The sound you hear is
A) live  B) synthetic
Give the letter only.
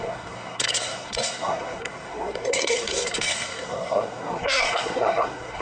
B